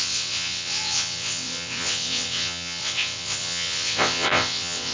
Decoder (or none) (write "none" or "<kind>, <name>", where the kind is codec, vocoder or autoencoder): vocoder, WaveNeXt